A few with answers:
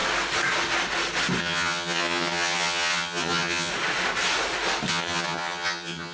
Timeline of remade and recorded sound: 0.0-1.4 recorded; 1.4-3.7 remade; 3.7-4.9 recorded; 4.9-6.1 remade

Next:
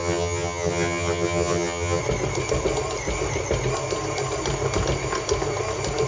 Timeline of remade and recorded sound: 0.0-2.0 remade; 2.0-6.1 recorded